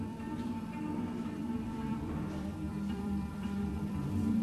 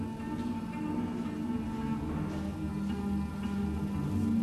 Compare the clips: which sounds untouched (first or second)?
second